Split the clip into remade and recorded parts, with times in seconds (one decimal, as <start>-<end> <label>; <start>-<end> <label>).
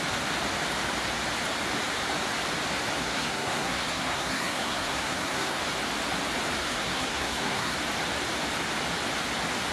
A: 0.0-3.0 recorded; 3.0-5.6 remade; 5.6-6.6 recorded; 6.6-7.8 remade; 7.8-9.7 recorded